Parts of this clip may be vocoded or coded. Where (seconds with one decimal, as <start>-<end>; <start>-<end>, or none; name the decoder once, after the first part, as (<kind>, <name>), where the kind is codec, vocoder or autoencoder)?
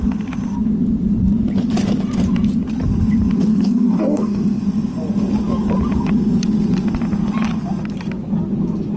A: 3.5-4.6 (codec, SNAC)